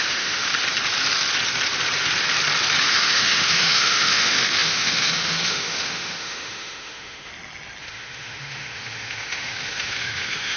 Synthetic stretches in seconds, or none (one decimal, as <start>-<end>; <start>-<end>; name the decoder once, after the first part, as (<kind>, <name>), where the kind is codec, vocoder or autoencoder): 0.0-0.5 (autoencoder, DAC-VAE); 2.8-7.3; 7.8-10.6